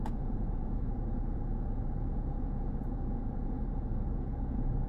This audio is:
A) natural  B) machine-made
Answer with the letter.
B